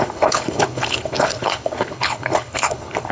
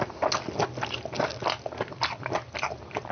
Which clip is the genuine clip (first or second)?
second